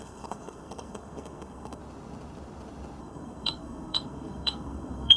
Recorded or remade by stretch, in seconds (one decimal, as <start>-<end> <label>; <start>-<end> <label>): 0.0-1.8 remade; 1.8-3.0 recorded; 3.0-5.2 remade